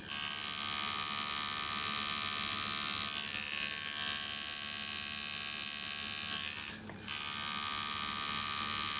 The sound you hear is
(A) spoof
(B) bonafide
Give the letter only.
B